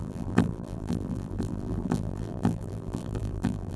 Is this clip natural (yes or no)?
no